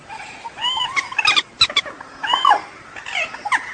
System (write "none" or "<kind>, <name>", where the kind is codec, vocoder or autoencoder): none